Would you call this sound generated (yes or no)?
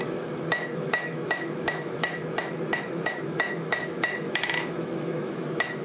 yes